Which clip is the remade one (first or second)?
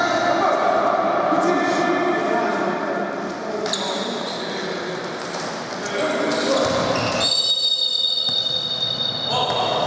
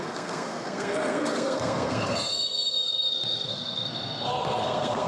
second